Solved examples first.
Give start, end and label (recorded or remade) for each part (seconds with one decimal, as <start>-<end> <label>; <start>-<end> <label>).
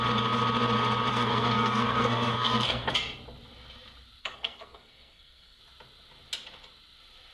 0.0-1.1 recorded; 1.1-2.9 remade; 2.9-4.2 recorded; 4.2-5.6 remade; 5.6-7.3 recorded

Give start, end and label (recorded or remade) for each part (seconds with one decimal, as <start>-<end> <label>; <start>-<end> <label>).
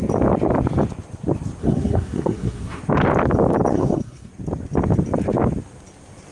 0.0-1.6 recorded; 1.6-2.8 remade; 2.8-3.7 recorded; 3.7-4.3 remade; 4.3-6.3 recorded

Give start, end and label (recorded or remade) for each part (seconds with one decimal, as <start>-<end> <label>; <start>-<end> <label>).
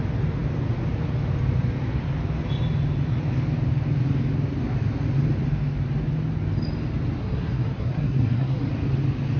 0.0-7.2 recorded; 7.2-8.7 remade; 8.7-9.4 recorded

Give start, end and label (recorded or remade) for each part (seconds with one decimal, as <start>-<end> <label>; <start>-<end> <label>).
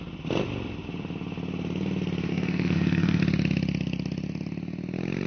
0.0-2.3 recorded; 2.3-3.2 remade; 3.2-5.3 recorded